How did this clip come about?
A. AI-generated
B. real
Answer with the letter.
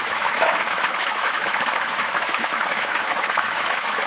A